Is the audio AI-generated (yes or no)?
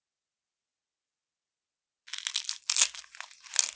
no